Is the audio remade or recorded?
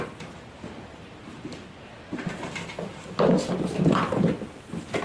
recorded